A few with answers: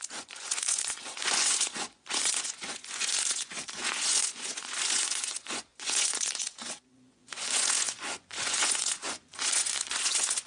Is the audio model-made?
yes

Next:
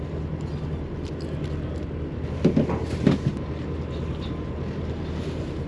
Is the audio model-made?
no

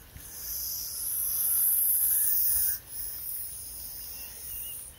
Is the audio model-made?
no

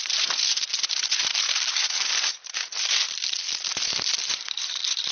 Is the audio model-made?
no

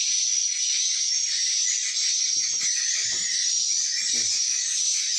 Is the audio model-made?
no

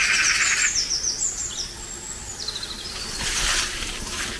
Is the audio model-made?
no